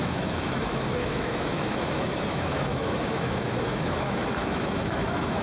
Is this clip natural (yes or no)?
no